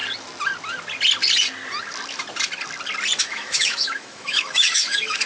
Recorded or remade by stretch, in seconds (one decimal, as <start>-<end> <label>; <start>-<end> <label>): 0.0-3.2 recorded; 3.2-5.3 remade